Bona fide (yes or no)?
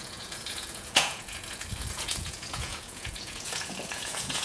no